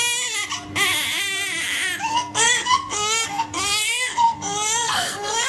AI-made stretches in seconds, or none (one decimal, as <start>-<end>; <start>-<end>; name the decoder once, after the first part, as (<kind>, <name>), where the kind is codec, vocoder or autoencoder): 2.1-5.5 (codec, SNAC)